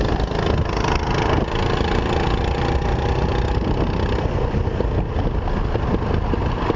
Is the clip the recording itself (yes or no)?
yes